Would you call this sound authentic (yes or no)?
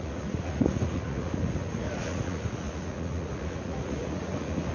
no